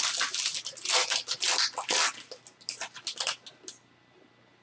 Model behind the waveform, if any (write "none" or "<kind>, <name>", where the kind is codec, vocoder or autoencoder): none